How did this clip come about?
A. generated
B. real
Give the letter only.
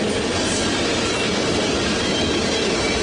B